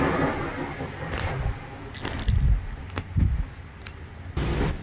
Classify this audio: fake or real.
real